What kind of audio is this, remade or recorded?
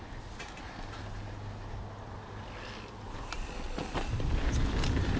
recorded